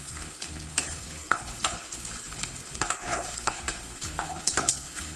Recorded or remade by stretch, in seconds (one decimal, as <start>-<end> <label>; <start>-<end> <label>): 0.0-5.2 remade